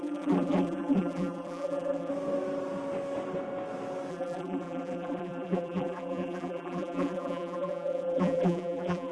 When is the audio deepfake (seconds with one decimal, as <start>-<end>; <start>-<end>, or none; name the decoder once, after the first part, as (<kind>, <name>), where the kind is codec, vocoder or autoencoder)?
0.0-2.1 (vocoder, BigVGAN v2); 4.1-9.1

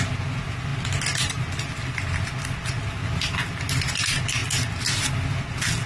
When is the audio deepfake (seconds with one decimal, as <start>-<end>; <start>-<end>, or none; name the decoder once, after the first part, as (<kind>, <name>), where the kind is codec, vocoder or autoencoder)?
none

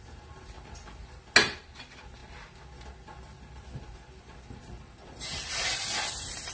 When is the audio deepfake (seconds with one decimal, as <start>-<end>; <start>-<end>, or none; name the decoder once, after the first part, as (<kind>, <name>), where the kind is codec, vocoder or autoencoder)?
none

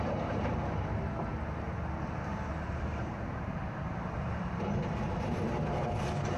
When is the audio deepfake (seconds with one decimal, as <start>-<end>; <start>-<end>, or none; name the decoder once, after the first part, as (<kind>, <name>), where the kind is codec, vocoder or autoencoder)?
0.0-1.3 (vocoder, BigVGAN v2); 5.1-6.4

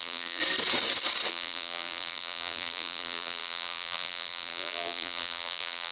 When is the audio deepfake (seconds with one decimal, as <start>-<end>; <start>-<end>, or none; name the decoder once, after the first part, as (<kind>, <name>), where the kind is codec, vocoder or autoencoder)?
0.0-0.4 (vocoder, BigVGAN v2); 1.3-5.9